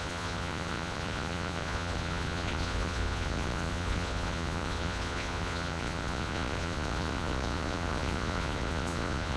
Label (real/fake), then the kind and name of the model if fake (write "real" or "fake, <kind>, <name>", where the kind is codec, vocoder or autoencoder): fake, vocoder, Vocos